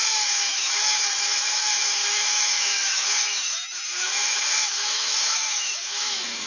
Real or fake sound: fake